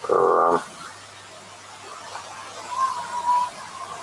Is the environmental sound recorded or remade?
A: recorded